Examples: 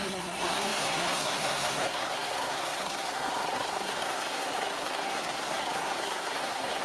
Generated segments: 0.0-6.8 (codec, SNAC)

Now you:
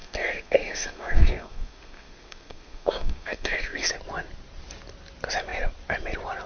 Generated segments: 0.0-3.9 (codec, SNAC)

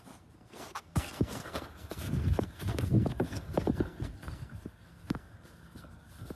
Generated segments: 0.0-6.4 (codec, SNAC)